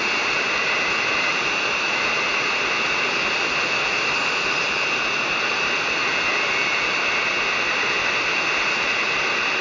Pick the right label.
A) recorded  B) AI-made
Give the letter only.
B